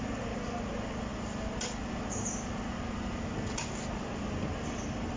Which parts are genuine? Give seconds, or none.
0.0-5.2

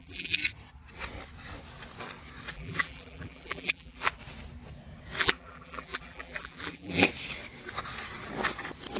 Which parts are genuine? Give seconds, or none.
0.4-2.5; 4.2-5.2; 7.1-9.0

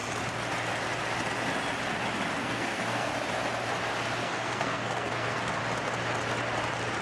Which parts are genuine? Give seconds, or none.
0.0-2.4; 3.1-4.2; 5.6-7.0